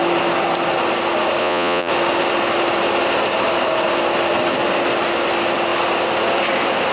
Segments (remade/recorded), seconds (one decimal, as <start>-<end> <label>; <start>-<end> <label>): 0.0-1.4 recorded; 1.4-1.9 remade; 1.9-6.9 recorded